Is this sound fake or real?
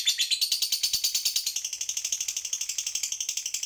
real